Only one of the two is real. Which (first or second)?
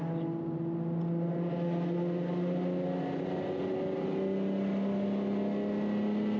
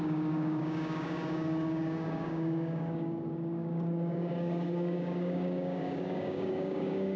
first